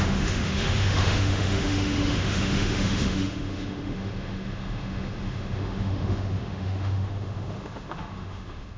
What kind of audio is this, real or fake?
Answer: fake